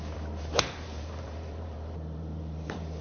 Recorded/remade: remade